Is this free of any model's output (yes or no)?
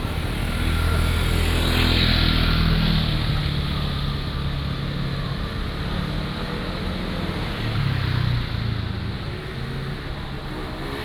yes